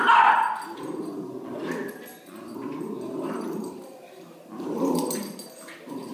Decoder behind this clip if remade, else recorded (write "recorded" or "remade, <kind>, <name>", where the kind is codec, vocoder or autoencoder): recorded